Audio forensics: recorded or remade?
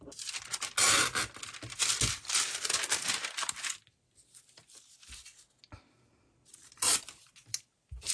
recorded